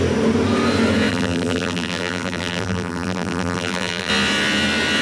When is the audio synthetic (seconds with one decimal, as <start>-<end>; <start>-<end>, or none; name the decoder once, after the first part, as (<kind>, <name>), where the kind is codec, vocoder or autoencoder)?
1.1-4.1 (vocoder, BigVGAN v2)